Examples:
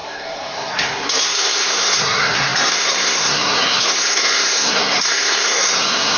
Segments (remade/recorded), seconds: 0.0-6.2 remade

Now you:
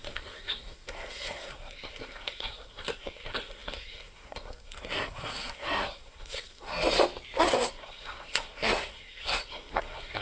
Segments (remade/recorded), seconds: 0.0-6.7 remade; 6.7-7.4 recorded; 7.4-10.2 remade